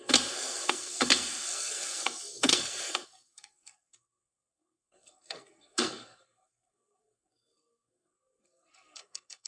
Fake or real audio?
fake